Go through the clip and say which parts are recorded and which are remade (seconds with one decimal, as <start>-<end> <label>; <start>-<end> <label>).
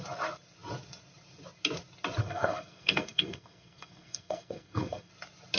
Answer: 0.0-2.2 recorded; 2.2-5.1 remade; 5.1-5.6 recorded